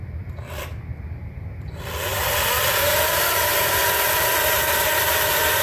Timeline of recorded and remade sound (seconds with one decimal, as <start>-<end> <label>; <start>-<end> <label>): 0.0-5.6 recorded